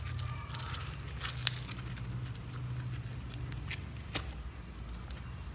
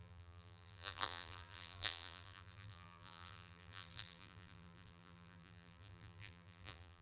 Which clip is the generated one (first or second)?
second